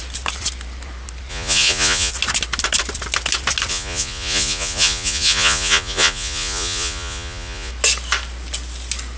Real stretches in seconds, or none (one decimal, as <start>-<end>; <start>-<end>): 0.0-1.3; 2.1-3.7; 7.7-9.2